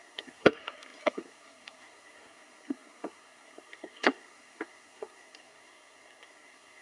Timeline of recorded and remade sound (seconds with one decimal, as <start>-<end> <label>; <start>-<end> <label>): 0.0-6.8 remade

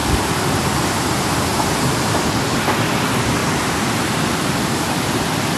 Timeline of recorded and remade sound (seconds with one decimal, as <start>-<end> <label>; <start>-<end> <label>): 0.0-1.5 recorded; 1.5-2.4 remade; 2.4-5.6 recorded

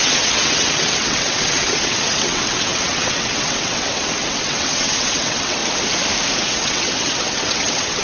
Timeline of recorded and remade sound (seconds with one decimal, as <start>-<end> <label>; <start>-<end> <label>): 0.0-5.6 remade; 5.6-6.4 recorded; 6.4-8.0 remade

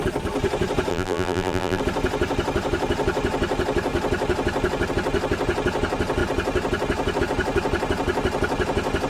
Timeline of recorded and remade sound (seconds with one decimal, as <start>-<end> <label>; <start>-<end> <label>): 0.0-0.9 recorded; 0.9-1.8 remade; 1.8-9.1 recorded